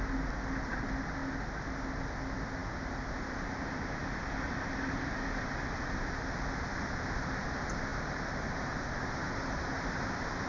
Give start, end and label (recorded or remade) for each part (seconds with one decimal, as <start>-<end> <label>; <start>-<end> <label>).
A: 0.0-10.5 recorded